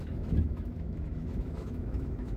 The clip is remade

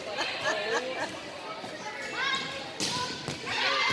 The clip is recorded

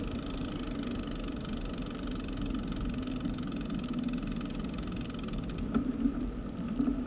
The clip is recorded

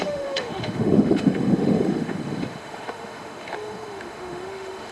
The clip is remade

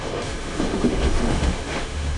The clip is remade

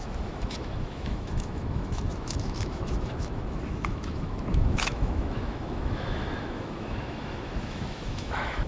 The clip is remade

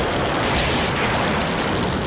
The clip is recorded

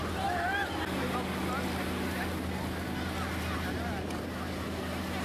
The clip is recorded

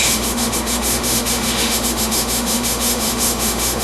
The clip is remade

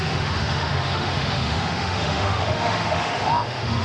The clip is remade